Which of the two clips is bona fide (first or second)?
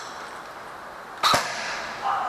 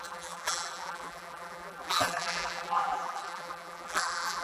first